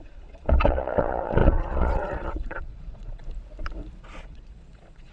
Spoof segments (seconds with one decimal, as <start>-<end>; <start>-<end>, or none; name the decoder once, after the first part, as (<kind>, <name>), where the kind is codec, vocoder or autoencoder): 0.0-3.2 (vocoder, Vocos); 4.0-5.1